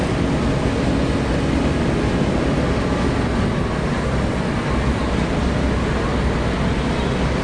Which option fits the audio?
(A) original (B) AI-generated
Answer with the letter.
A